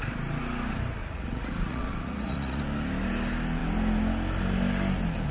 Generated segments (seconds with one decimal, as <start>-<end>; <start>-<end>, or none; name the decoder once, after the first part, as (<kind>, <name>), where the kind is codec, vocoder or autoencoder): 1.0-2.6 (vocoder, Vocos)